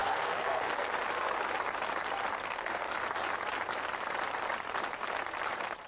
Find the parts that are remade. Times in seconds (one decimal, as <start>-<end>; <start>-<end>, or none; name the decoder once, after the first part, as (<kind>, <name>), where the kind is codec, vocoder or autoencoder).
0.0-0.9 (codec, SNAC); 2.3-2.9